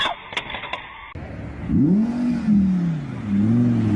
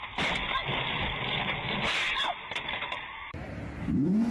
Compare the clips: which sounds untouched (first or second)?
first